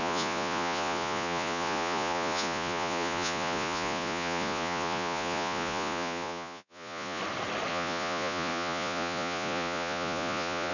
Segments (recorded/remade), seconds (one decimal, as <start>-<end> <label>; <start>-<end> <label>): 0.0-7.2 remade; 7.2-7.7 recorded; 7.7-10.7 remade